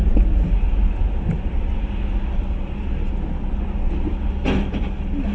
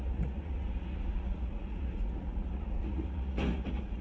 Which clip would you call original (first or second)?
first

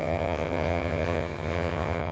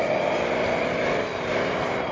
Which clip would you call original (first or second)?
second